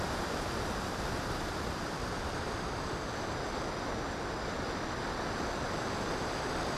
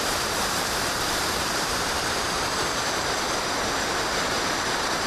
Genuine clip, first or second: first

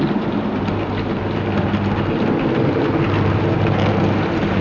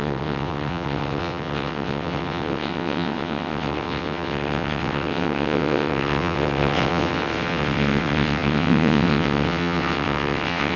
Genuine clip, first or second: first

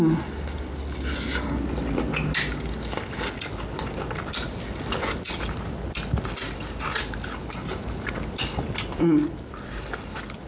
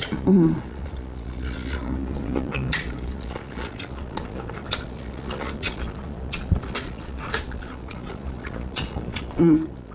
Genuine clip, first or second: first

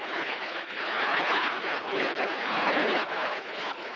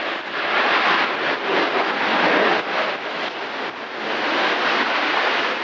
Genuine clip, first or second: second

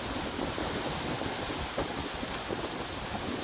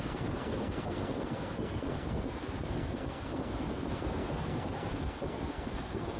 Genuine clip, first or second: first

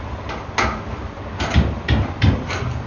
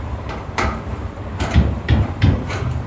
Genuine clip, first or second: first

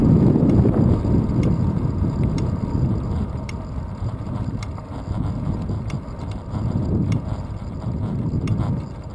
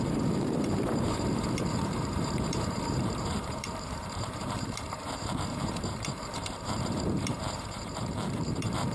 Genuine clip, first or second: first